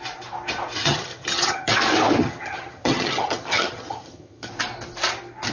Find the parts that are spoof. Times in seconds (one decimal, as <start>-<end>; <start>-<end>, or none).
0.8-1.7; 2.2-4.5